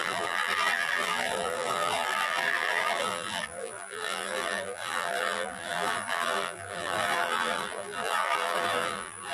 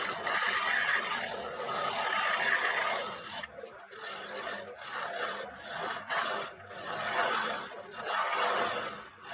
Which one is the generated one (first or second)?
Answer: first